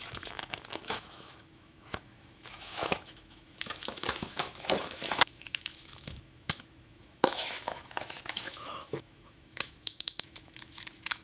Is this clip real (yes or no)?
no